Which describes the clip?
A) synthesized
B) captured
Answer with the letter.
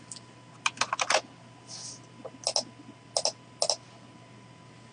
B